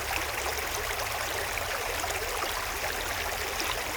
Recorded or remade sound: recorded